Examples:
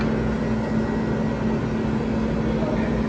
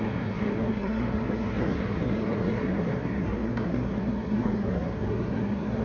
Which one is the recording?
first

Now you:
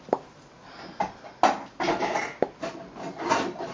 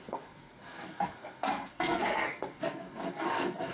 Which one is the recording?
first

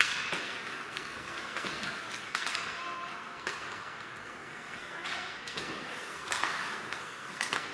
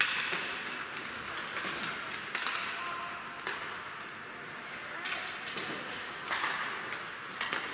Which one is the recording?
second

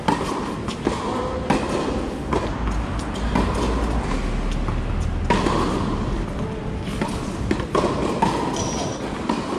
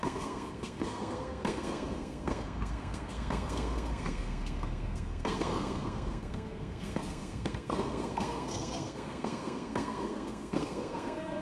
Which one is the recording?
first